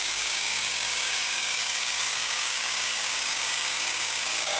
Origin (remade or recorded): remade